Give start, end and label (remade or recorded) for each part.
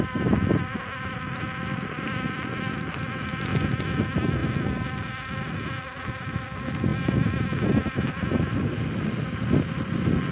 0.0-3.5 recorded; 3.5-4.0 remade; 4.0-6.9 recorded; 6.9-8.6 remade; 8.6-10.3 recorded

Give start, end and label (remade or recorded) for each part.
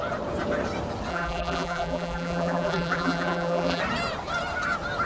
0.0-1.1 recorded; 1.1-3.8 remade; 3.8-5.1 recorded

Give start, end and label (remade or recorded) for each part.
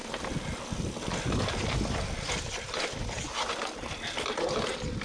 0.0-5.0 recorded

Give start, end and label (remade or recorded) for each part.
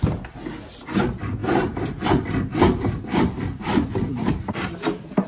0.0-5.3 remade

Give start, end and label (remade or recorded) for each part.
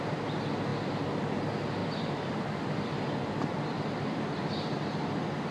0.0-0.7 recorded; 0.7-1.2 remade; 1.2-1.8 recorded; 1.8-5.1 remade; 5.1-5.5 recorded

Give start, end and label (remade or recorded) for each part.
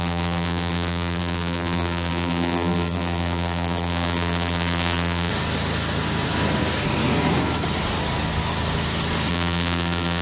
0.0-5.3 remade; 5.3-9.3 recorded; 9.3-10.2 remade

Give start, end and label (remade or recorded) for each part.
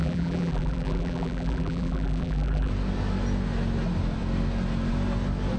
0.0-2.7 remade; 2.7-5.6 recorded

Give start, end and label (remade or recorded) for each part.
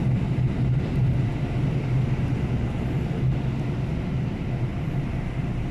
0.0-4.7 recorded; 4.7-5.7 remade